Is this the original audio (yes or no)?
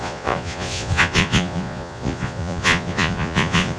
no